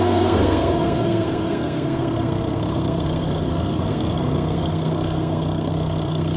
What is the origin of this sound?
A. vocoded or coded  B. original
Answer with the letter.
A